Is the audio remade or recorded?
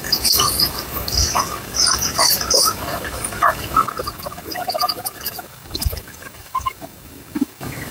remade